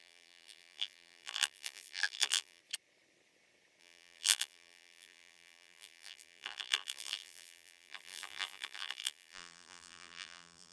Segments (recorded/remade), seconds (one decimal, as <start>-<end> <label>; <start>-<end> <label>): 0.0-2.6 remade; 2.6-3.8 recorded; 3.8-10.7 remade